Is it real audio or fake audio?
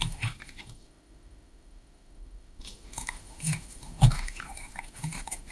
fake